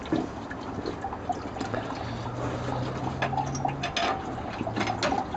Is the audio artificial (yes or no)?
no